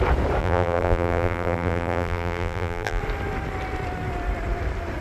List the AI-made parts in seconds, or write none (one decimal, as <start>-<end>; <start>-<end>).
0.4-3.0